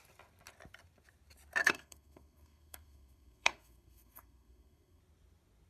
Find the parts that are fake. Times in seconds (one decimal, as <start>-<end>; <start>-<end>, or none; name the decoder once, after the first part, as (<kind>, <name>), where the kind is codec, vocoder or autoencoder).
1.6-5.0 (codec, SNAC)